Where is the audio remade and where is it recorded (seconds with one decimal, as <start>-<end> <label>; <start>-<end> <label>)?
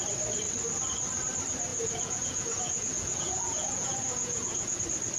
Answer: 0.0-1.7 recorded; 1.7-4.8 remade; 4.8-5.2 recorded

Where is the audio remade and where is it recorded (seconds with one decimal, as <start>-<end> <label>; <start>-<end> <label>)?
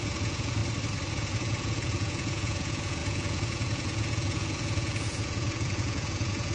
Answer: 0.0-0.6 remade; 0.6-1.1 recorded; 1.1-6.5 remade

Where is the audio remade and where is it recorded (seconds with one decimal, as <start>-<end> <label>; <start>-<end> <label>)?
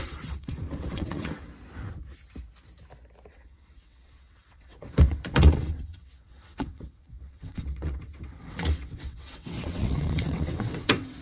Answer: 0.0-1.5 remade; 1.5-3.3 recorded; 3.3-11.2 remade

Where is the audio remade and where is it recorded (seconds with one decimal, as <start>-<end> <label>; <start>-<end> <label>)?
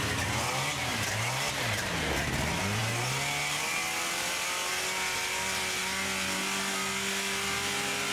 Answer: 0.0-8.1 recorded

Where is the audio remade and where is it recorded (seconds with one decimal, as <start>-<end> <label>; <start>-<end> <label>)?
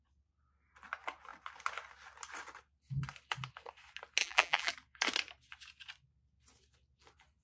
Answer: 0.0-4.2 recorded; 4.2-4.7 remade; 4.7-7.4 recorded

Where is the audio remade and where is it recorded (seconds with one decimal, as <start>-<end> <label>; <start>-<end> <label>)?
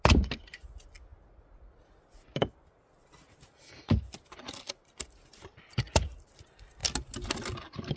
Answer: 0.0-8.0 recorded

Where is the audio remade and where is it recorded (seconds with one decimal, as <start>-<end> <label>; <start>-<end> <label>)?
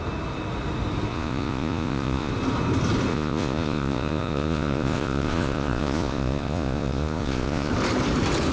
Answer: 0.0-1.1 recorded; 1.1-2.3 remade; 2.3-3.1 recorded; 3.1-7.7 remade; 7.7-8.5 recorded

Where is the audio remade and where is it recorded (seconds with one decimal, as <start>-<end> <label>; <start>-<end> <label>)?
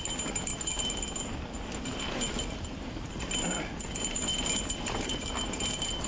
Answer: 0.0-4.3 recorded; 4.3-6.1 remade